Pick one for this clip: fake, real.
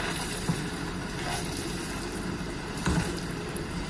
fake